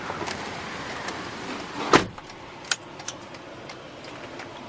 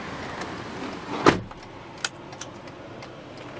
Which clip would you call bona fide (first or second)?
second